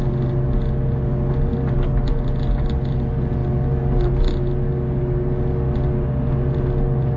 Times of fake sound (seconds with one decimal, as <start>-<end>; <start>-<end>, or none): none